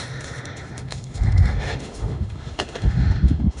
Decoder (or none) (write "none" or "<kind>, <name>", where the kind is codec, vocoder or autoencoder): autoencoder, DAC-VAE